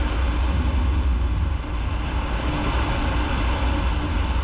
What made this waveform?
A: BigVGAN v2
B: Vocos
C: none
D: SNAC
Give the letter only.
C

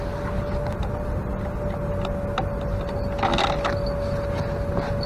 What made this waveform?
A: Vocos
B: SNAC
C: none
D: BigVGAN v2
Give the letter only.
C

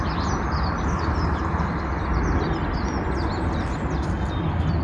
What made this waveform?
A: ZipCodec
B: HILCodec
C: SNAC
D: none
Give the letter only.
D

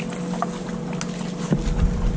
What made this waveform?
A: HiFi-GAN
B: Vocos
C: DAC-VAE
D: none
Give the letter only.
D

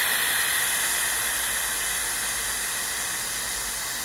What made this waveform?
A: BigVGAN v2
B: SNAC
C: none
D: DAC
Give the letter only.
C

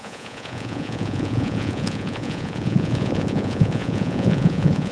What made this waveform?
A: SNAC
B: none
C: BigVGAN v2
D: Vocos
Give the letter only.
D